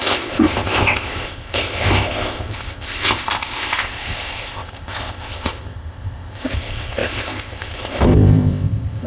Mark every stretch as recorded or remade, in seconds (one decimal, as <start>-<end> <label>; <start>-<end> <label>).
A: 0.0-9.1 remade